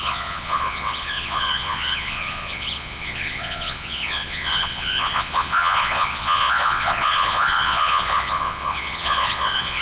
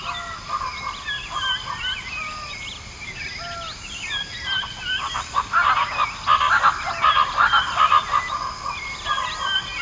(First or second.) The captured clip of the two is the second